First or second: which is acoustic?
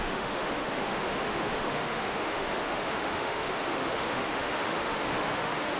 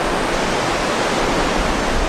second